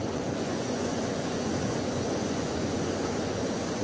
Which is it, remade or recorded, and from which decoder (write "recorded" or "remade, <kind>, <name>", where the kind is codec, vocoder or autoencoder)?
remade, vocoder, Vocos